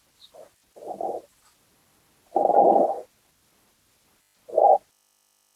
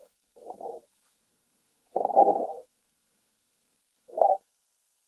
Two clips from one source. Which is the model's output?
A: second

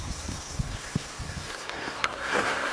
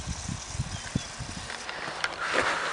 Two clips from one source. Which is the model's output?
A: first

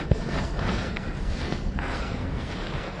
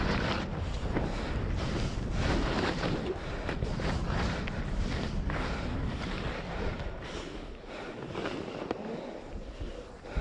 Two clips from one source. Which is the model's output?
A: first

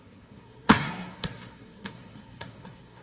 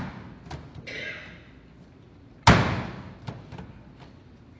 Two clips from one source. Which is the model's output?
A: first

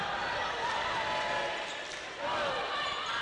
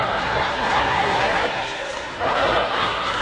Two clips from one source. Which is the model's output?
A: second